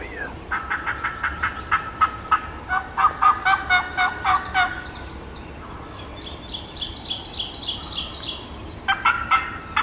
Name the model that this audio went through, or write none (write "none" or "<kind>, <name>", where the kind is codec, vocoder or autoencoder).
none